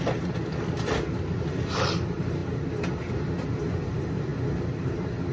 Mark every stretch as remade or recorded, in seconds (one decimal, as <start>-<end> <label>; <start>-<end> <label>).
0.0-5.3 recorded